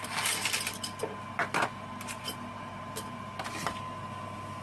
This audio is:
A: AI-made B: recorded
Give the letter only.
B